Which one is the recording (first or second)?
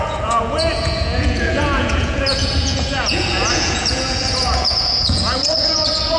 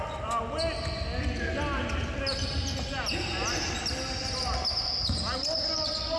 second